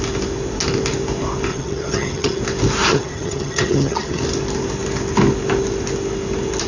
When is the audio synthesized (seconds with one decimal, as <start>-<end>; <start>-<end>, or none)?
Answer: 1.5-2.4; 2.9-4.2